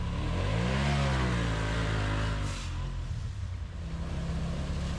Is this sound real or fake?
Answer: real